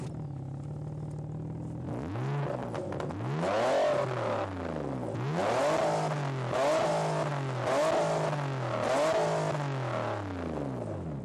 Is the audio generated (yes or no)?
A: no